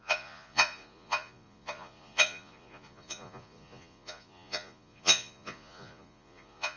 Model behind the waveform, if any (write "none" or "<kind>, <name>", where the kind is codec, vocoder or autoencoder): vocoder, Vocos